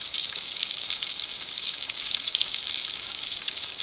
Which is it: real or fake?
fake